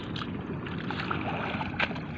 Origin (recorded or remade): recorded